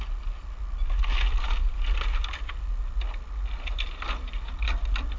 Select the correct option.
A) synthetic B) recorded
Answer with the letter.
B